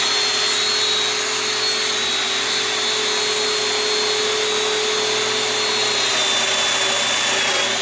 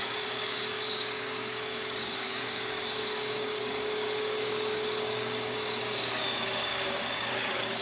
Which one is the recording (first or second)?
first